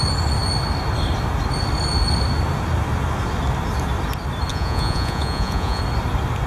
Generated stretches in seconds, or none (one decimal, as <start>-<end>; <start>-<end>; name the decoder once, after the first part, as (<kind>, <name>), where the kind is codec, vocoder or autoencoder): 4.5-5.8 (vocoder, Vocos)